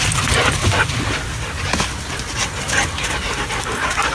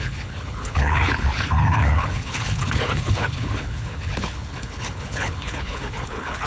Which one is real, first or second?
first